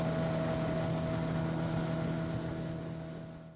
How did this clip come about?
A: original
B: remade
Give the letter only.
A